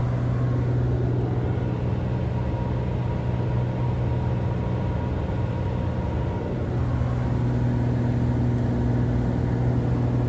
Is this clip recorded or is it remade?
recorded